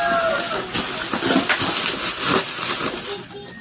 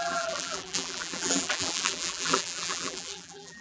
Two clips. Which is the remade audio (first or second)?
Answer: second